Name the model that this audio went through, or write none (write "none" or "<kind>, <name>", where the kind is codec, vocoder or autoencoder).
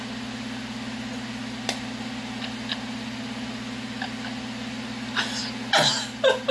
none